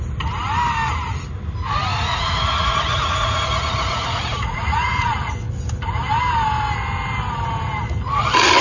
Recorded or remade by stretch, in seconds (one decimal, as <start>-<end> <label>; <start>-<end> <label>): 0.0-1.9 recorded; 1.9-5.3 remade; 5.3-8.6 recorded